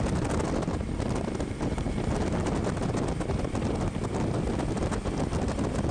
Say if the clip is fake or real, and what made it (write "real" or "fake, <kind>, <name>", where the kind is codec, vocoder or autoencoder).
real